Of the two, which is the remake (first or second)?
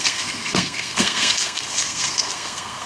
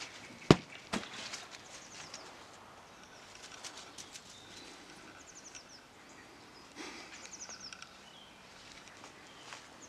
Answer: first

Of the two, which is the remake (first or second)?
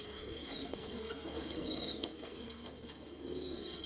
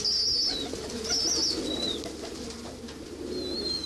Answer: first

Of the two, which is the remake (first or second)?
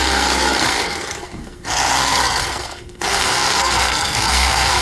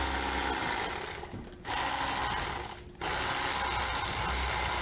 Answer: first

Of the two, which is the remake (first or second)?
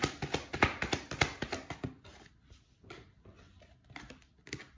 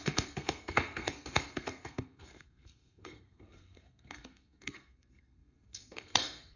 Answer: second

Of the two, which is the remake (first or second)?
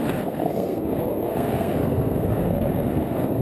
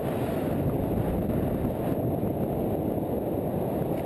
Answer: first